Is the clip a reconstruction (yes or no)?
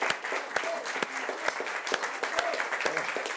no